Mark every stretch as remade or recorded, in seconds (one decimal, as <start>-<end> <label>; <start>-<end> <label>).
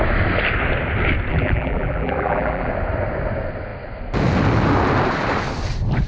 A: 0.0-1.3 recorded; 1.3-2.7 remade; 2.7-6.1 recorded